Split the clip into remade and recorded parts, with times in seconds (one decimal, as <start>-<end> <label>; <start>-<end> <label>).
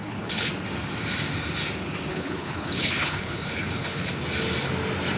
0.0-0.5 remade; 0.5-2.1 recorded; 2.1-4.1 remade; 4.1-5.2 recorded